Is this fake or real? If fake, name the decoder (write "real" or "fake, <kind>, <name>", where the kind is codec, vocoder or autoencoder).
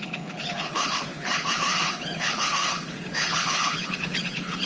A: fake, codec, HILCodec